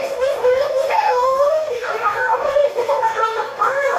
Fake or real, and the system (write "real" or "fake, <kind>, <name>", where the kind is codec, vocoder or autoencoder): fake, codec, DAC